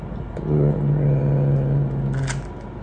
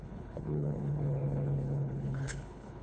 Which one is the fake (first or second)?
second